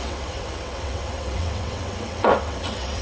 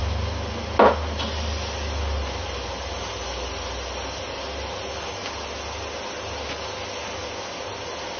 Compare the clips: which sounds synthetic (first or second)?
first